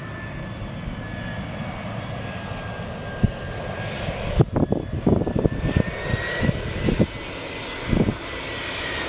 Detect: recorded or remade recorded